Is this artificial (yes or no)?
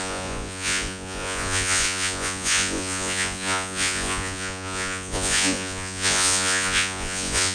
yes